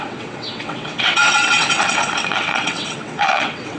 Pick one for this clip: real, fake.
fake